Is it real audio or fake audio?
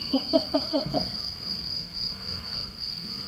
fake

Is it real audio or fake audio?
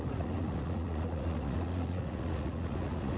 fake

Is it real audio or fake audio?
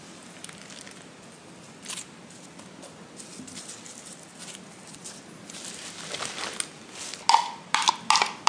real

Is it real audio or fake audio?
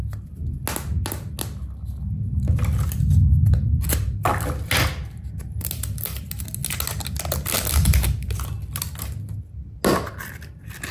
real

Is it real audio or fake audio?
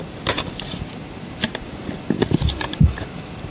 fake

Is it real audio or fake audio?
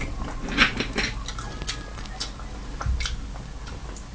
real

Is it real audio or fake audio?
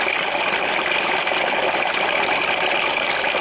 real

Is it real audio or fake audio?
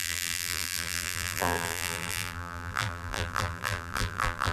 fake